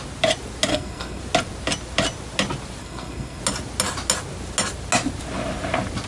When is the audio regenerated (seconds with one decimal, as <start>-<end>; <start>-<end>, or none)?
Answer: 0.7-1.2; 2.8-3.4